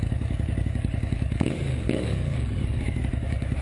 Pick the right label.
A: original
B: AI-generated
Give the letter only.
B